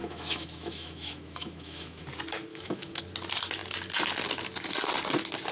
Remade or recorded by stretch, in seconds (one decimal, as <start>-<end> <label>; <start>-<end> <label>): 0.0-2.0 remade; 2.0-2.5 recorded; 2.5-3.0 remade; 3.0-5.5 recorded